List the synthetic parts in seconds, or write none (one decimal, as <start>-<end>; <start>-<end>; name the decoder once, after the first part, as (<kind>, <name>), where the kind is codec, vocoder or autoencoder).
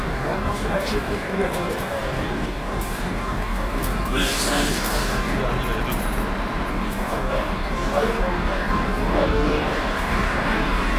0.0-5.4 (codec, DAC); 6.7-11.0